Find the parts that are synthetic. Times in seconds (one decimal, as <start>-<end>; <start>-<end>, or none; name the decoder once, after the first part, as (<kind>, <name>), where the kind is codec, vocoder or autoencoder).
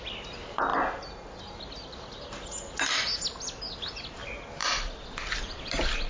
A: none